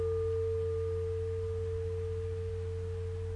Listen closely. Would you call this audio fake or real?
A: real